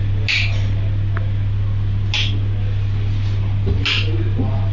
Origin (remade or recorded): recorded